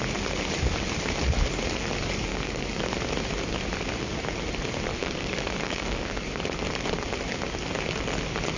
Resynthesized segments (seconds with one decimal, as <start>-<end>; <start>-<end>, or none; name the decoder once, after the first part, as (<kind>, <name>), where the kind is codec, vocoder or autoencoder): 2.3-2.9 (codec, DAC); 5.0-6.4